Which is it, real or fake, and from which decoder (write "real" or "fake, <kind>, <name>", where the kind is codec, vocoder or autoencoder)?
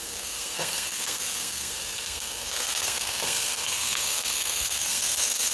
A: fake, codec, SNAC